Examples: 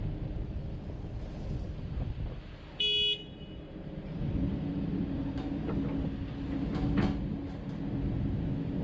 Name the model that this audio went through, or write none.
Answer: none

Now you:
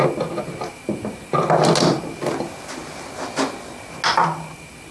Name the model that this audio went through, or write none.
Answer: none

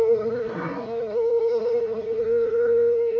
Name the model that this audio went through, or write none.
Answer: codec, SNAC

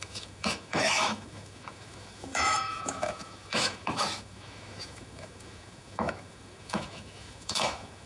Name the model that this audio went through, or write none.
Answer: autoencoder, DAC-VAE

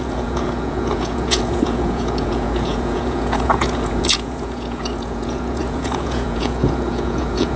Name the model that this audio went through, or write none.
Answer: vocoder, Vocos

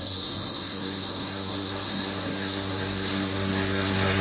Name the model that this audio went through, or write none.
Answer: codec, SNAC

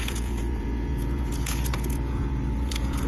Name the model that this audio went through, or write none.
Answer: vocoder, Vocos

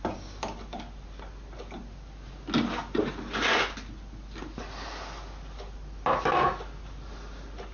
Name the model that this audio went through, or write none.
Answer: none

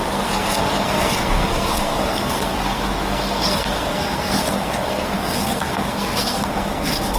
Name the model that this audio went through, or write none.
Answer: codec, SNAC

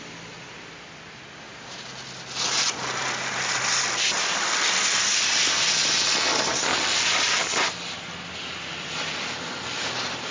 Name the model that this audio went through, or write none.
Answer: none